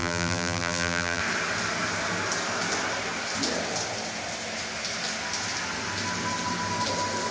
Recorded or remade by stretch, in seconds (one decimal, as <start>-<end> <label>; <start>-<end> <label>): 0.0-1.2 remade; 1.2-7.3 recorded